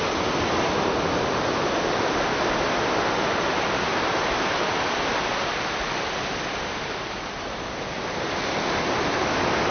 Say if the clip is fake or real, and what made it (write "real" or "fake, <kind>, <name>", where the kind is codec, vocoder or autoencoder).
real